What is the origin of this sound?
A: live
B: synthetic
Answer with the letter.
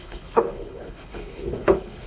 B